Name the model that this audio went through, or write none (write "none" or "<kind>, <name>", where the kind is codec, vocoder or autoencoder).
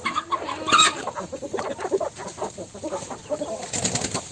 none